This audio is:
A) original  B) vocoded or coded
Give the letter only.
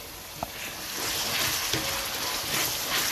A